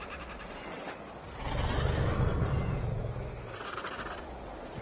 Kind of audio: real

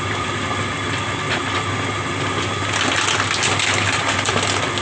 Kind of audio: real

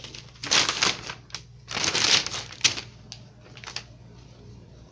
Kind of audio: real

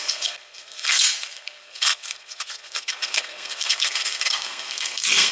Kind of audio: fake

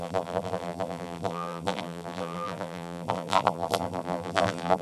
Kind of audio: fake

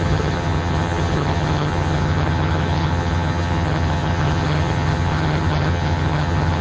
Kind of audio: fake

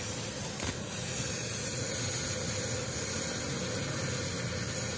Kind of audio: real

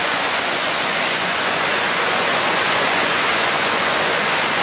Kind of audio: fake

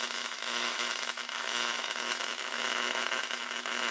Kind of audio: fake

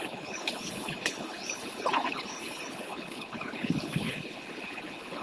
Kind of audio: fake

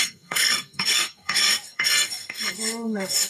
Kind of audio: fake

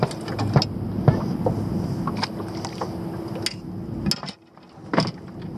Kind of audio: real